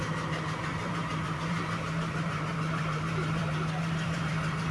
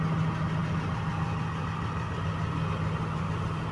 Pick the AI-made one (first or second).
first